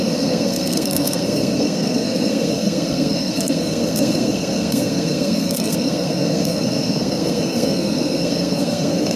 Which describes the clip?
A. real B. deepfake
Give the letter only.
B